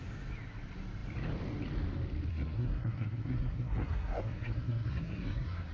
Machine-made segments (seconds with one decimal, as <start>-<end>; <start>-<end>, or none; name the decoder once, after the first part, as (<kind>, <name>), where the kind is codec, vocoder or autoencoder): 2.3-5.7 (codec, SNAC)